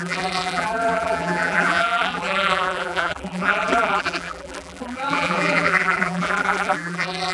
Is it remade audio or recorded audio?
remade